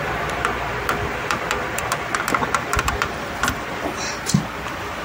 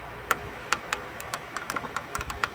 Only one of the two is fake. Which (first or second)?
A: second